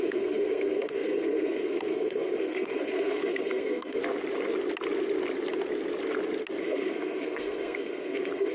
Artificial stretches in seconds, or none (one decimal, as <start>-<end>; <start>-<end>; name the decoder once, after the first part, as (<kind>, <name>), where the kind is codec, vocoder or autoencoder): 0.0-4.0 (codec, SNAC); 6.6-8.5